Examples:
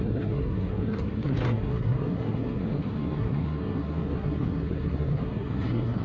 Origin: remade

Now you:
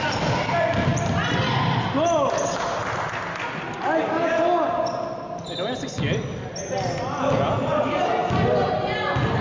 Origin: recorded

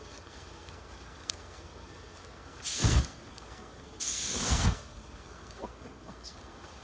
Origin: remade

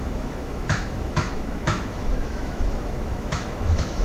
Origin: remade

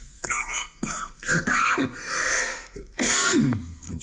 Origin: remade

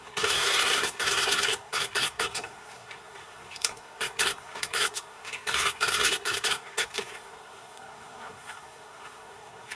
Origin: remade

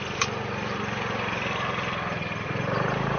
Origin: recorded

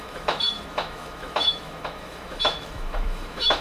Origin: remade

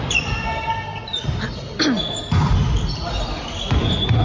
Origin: recorded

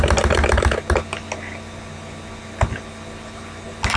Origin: recorded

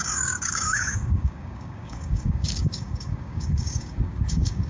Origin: remade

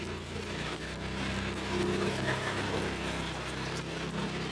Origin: recorded